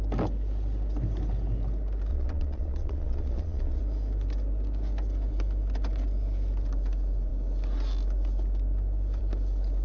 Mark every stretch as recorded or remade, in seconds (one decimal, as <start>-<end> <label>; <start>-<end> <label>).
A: 0.0-2.1 recorded; 2.1-3.8 remade; 3.8-9.8 recorded